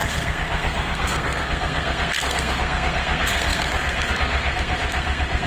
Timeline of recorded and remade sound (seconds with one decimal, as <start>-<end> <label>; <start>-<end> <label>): 0.0-5.5 remade